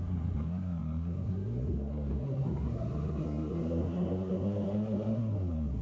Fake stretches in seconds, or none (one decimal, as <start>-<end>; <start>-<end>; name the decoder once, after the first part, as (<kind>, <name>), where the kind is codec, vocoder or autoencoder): 0.0-5.8 (codec, SNAC)